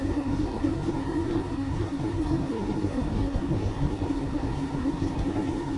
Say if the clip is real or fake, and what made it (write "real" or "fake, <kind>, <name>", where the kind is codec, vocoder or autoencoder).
fake, codec, SNAC